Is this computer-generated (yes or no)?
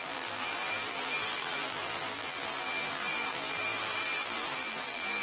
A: yes